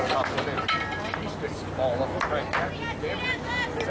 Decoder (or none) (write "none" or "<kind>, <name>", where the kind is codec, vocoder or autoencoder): none